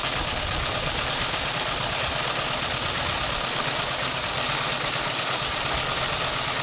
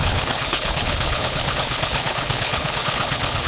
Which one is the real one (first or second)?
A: first